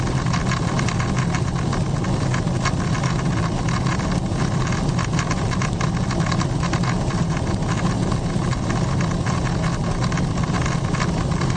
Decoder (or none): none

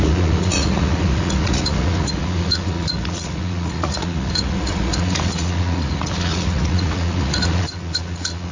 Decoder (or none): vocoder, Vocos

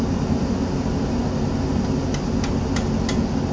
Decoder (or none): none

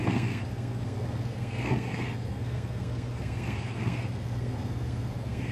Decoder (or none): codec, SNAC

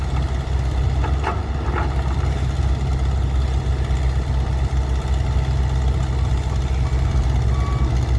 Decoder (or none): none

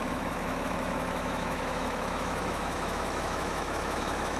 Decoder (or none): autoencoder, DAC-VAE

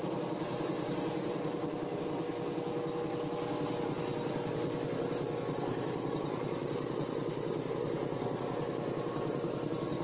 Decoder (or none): none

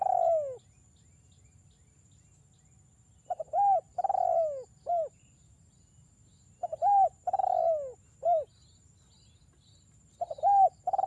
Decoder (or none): none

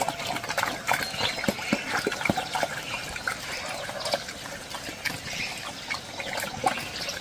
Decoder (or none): none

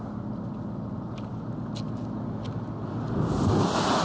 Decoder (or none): none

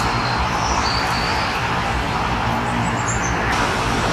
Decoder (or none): vocoder, BigVGAN v2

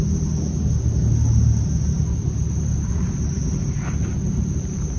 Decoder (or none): none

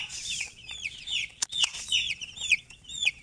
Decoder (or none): vocoder, Vocos